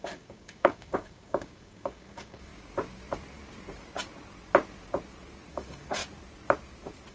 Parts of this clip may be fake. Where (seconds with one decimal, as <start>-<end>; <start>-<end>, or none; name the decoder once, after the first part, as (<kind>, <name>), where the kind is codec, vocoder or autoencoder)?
0.0-2.5 (codec, DAC); 5.5-6.0